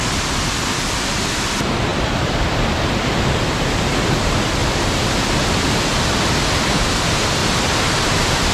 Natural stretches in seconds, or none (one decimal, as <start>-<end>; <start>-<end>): 0.0-1.9; 2.4-7.4